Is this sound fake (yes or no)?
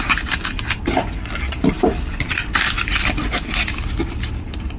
no